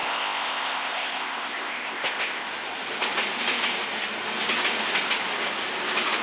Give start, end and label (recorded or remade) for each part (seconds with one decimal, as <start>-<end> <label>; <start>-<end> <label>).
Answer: 0.0-2.5 remade; 2.5-6.2 recorded